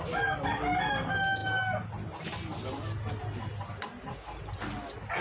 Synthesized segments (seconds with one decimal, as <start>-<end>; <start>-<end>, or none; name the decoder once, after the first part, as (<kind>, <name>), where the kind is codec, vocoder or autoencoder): none